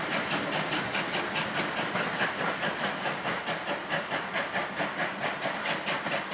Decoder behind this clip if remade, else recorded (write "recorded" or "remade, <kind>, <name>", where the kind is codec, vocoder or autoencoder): recorded